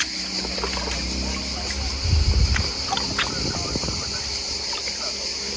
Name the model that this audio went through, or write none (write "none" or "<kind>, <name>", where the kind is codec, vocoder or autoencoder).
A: none